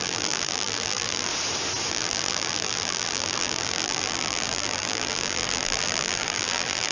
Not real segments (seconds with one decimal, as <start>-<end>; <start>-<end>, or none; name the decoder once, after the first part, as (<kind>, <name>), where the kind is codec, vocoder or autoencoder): 0.0-1.3 (vocoder, BigVGAN v2); 1.9-6.9